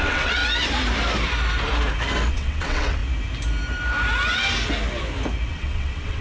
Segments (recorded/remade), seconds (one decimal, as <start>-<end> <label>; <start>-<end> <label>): 0.0-0.4 remade; 0.4-2.3 recorded; 2.3-3.0 remade; 3.0-5.5 recorded; 5.5-6.2 remade